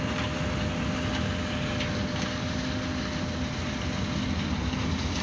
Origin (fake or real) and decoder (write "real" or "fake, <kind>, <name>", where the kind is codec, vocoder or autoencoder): real